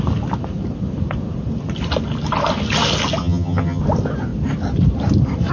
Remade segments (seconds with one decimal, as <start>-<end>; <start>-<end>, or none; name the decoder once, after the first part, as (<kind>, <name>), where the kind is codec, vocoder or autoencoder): 3.2-3.8 (vocoder, HiFi-GAN)